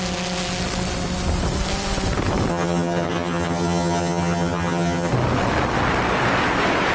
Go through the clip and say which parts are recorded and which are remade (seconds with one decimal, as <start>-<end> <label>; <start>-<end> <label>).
0.0-2.5 recorded; 2.5-5.1 remade; 5.1-6.9 recorded